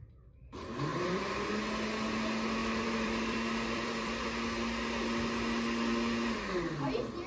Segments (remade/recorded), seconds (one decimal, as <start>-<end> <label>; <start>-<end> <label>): 0.0-0.9 recorded; 0.9-1.5 remade; 1.5-2.6 recorded; 2.6-4.3 remade; 4.3-7.3 recorded

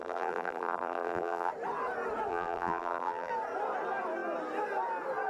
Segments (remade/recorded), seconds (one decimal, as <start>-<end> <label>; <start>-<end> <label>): 0.0-1.5 remade; 1.5-2.3 recorded; 2.3-3.3 remade; 3.3-5.3 recorded

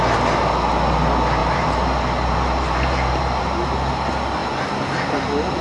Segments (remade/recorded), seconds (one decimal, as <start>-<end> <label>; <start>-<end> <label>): 0.0-1.4 recorded; 1.4-3.4 remade; 3.4-5.6 recorded

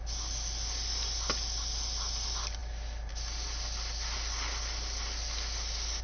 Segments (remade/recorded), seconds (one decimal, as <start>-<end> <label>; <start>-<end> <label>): 0.0-6.0 recorded

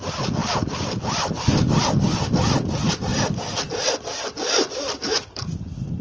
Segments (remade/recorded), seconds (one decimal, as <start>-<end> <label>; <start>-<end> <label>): 0.0-0.4 recorded; 0.4-1.8 remade; 1.8-3.1 recorded; 3.1-6.0 remade